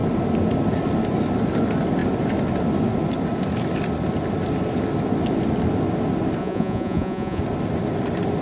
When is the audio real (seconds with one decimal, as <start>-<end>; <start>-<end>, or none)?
0.0-6.4; 7.4-8.4

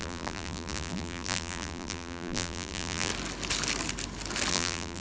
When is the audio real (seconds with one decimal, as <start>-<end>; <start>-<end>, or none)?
3.1-4.5

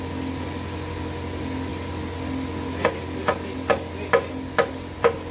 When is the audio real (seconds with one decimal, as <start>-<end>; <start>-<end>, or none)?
0.0-5.3

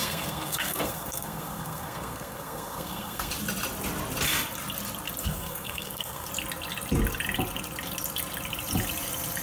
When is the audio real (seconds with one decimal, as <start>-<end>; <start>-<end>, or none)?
3.3-5.2; 6.3-9.4

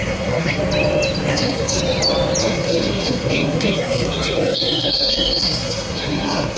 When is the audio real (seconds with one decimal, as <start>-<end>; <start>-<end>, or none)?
0.6-1.3; 1.8-2.4

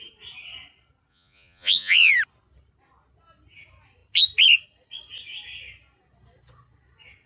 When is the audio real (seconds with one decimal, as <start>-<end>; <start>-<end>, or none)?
0.0-1.1; 2.1-7.3

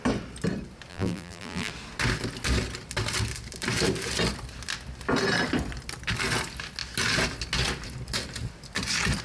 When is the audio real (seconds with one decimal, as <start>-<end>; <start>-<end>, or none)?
0.0-0.9; 1.7-9.2

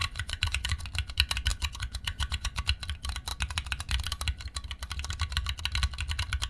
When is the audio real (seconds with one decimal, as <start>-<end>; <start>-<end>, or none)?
0.8-1.5; 2.6-6.5